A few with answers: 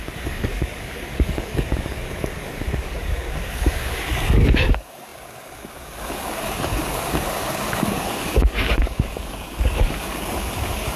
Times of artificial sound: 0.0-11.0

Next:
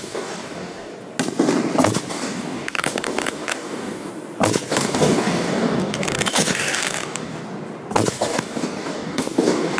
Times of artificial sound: 0.0-0.9; 2.1-4.1; 4.7-7.4; 8.1-9.8